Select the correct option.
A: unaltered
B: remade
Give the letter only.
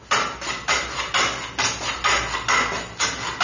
A